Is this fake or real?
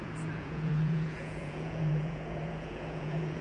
fake